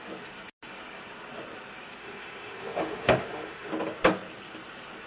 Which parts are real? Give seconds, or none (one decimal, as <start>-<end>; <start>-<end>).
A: 0.0-2.0; 3.7-5.1